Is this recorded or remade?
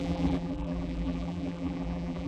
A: remade